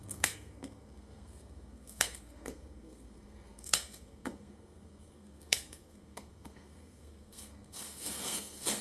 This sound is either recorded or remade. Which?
remade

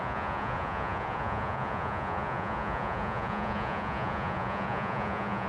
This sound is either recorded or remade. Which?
remade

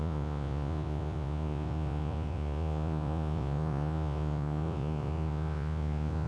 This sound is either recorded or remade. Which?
remade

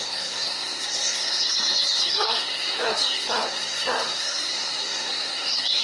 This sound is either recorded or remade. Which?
remade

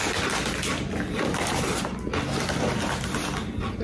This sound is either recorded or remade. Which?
recorded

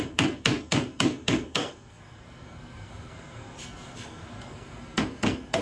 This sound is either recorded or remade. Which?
remade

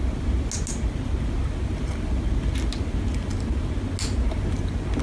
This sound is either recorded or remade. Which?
recorded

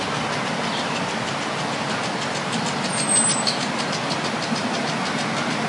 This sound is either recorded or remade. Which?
recorded